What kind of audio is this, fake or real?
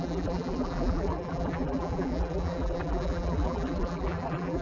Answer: fake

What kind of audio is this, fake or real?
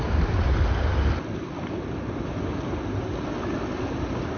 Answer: real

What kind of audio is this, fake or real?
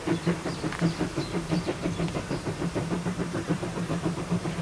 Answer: fake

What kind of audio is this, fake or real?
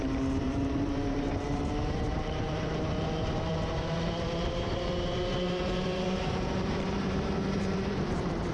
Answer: fake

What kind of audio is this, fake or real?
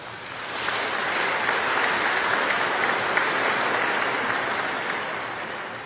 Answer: real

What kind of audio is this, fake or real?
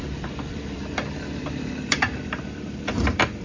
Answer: fake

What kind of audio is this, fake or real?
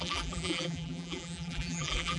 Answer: fake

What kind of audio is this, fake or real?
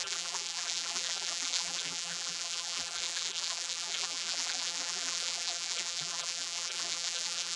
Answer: fake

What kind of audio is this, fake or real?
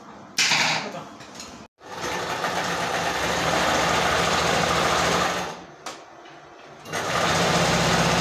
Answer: real